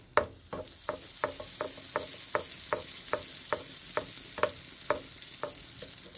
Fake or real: real